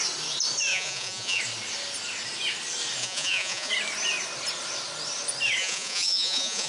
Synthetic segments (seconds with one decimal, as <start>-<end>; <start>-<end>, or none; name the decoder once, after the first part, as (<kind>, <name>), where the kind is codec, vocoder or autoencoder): 0.7-1.4 (vocoder, Vocos); 3.0-3.7; 5.6-6.7